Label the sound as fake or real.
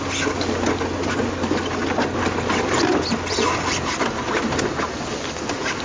real